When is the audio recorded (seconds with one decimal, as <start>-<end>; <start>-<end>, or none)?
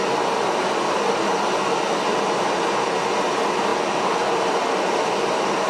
1.3-2.5; 3.7-4.9